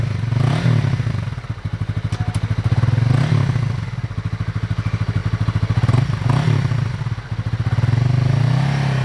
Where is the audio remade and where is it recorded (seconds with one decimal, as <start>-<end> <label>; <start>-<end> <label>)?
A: 0.0-9.0 recorded

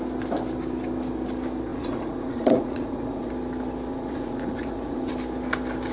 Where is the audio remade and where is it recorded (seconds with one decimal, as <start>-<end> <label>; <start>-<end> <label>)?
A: 0.0-1.7 recorded; 1.7-3.3 remade; 3.3-3.9 recorded; 3.9-5.1 remade; 5.1-5.9 recorded

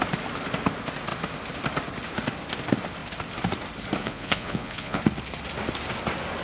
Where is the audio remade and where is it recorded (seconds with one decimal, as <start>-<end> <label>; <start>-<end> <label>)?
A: 0.0-4.0 recorded; 4.0-5.0 remade; 5.0-6.4 recorded